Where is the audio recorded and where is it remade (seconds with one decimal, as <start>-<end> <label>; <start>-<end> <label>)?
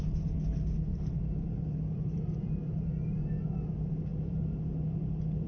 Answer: 0.0-0.9 recorded; 0.9-3.5 remade; 3.5-4.1 recorded; 4.1-4.6 remade; 4.6-5.5 recorded